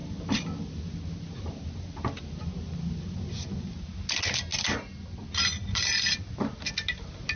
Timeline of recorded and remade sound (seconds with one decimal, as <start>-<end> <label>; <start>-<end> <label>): 0.0-7.4 recorded